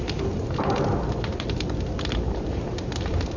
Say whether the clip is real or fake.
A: fake